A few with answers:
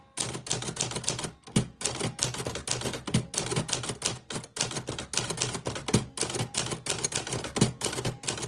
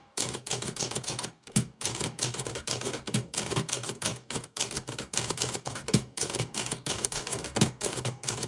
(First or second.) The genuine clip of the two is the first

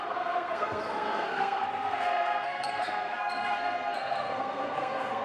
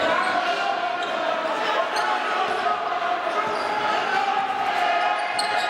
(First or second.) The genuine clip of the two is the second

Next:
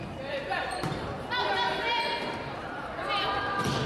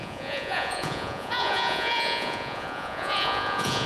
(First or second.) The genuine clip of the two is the first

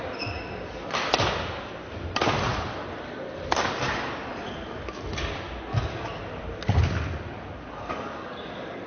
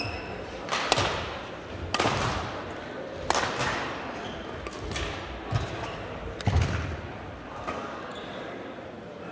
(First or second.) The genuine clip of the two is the first